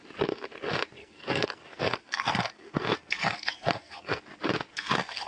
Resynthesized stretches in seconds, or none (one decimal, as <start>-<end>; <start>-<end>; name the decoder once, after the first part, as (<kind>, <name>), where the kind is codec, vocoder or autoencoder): 1.0-4.2 (codec, SNAC); 4.7-5.3